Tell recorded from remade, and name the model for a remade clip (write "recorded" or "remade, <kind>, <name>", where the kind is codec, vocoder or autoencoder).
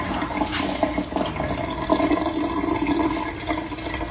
recorded